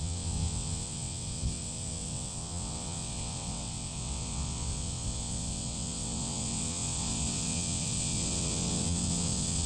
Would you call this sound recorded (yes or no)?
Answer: no